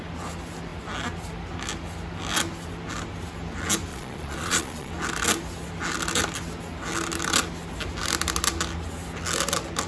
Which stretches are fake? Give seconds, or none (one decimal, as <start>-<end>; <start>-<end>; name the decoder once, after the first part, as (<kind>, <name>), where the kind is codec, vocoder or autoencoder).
3.9-4.9 (vocoder, Vocos)